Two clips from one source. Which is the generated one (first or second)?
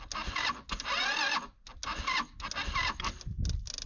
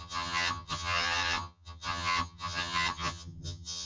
second